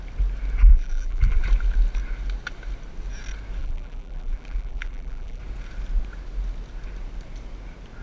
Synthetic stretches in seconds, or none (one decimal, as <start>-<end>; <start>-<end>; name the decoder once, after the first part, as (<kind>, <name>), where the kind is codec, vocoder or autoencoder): 0.7-1.4 (vocoder, BigVGAN v2); 3.6-5.4